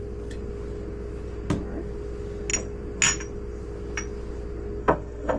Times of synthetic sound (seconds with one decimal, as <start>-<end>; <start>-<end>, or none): 4.8-5.4